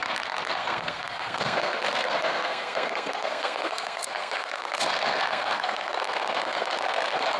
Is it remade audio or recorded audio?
remade